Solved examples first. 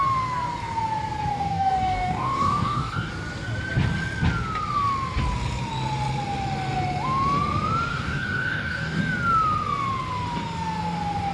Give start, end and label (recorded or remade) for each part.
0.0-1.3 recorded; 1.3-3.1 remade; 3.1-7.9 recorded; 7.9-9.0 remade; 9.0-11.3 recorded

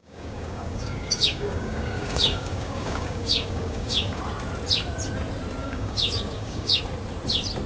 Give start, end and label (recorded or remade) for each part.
0.0-4.2 remade; 4.2-5.6 recorded; 5.6-6.8 remade; 6.8-7.7 recorded

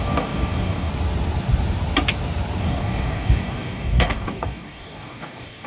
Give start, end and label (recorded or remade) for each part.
0.0-0.9 remade; 0.9-2.6 recorded; 2.6-5.7 remade

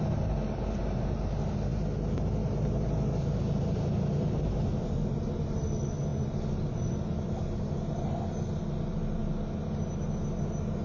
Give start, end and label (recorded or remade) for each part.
0.0-10.8 recorded

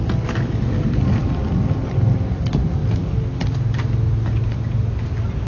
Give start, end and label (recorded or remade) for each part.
0.0-5.5 recorded

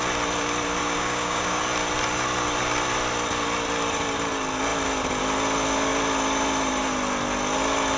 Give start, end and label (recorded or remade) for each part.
0.0-0.8 recorded; 0.8-1.6 remade; 1.6-8.0 recorded